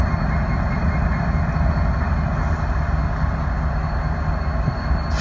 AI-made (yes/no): no